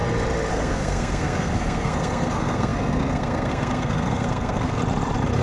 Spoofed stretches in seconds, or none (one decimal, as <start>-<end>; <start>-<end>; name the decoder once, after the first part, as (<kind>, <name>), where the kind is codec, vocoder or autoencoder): 0.5-4.8 (codec, SNAC)